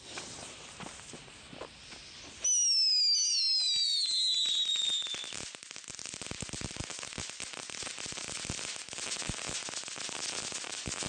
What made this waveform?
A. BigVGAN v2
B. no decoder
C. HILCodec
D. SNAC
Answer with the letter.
B